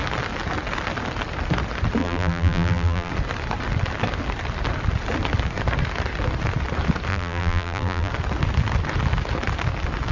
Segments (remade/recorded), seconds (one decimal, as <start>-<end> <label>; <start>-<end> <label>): 0.0-2.0 recorded; 2.0-3.1 remade; 3.1-7.1 recorded; 7.1-8.1 remade; 8.1-10.1 recorded